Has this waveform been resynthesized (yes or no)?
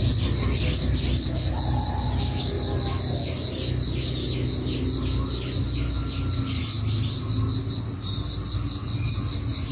no